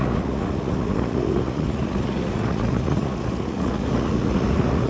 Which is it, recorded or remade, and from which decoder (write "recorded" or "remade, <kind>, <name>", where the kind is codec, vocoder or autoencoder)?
remade, vocoder, Vocos